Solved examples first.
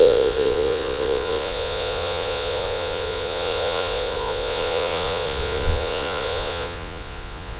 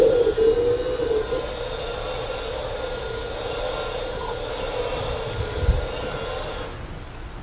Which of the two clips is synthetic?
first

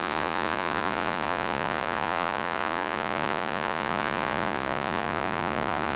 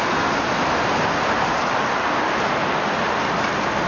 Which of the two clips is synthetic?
first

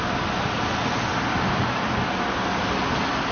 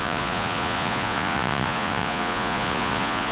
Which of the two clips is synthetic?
second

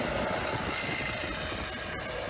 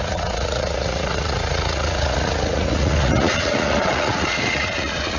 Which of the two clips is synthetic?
second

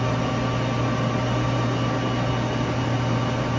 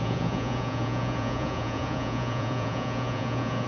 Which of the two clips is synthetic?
second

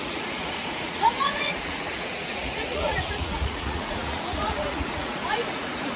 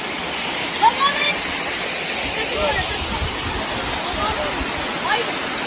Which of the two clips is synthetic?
first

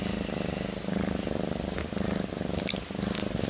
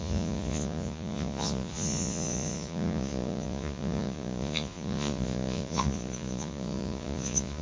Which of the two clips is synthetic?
second